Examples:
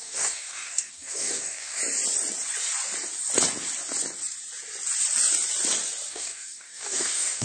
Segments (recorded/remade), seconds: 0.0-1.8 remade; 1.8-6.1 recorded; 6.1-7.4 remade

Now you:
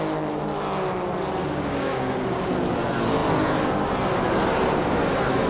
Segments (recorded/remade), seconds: 0.0-1.4 recorded; 1.4-2.5 remade; 2.5-5.5 recorded

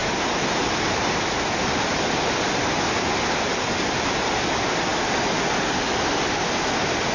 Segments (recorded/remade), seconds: 0.0-7.1 recorded

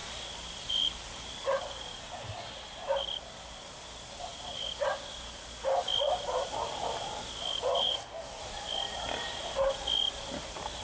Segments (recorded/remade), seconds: 0.0-7.8 recorded; 7.8-8.4 remade; 8.4-10.8 recorded

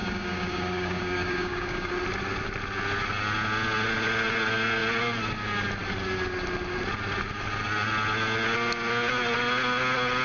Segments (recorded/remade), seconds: 0.0-1.9 remade; 1.9-10.2 recorded